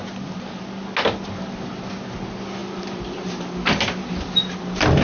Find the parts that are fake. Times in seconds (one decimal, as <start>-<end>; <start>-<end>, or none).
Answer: none